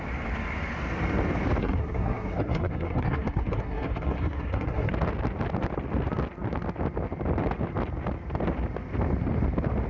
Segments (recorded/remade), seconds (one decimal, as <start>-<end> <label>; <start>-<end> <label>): 0.0-1.6 recorded; 1.6-4.9 remade; 4.9-9.9 recorded